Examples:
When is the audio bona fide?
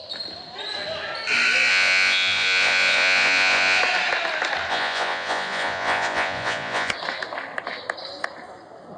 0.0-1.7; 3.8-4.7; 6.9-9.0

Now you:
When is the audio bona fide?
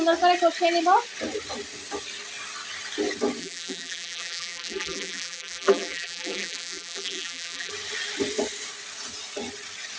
0.0-3.4; 7.7-10.0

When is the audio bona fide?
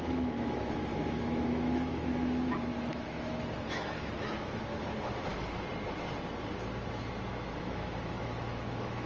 5.3-7.3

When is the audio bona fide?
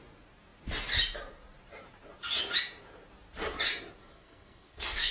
0.0-4.0